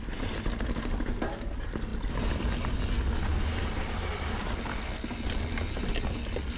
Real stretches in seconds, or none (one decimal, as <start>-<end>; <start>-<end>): 0.0-6.6

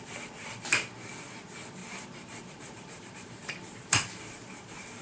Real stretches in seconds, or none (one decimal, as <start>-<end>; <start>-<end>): 0.0-1.8

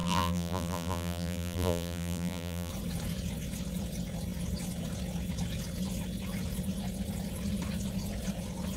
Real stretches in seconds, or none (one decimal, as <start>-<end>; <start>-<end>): 2.7-8.8

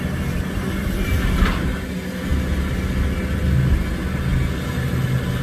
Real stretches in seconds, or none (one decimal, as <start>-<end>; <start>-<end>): 0.0-5.4

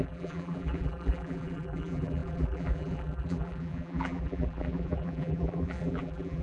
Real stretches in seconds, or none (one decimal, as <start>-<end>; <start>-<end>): none

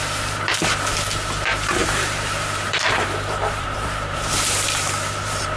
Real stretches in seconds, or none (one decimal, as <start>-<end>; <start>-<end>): 0.0-1.8

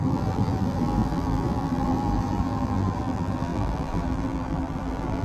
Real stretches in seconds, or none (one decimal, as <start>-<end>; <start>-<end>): none

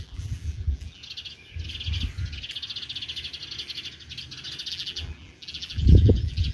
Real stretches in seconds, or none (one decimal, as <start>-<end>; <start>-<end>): 1.0-4.7